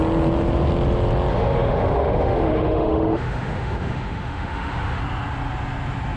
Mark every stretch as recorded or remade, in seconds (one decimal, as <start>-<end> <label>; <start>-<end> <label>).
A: 0.0-1.3 recorded; 1.3-5.0 remade; 5.0-6.2 recorded